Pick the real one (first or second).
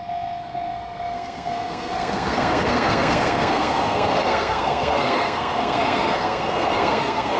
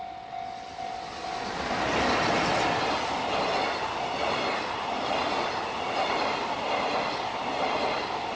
second